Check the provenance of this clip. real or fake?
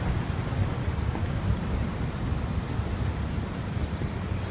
real